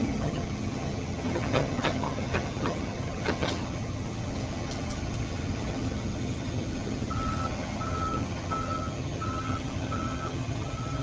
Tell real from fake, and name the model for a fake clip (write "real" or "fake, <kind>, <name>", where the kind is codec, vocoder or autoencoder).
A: fake, vocoder, HiFi-GAN